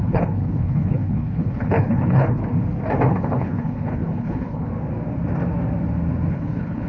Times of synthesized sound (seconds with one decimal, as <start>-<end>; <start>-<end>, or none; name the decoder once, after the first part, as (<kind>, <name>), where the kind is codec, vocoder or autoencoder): 0.0-2.4 (codec, HILCodec); 3.1-4.7; 6.3-6.9